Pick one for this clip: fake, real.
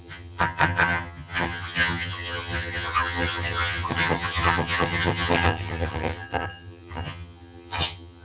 fake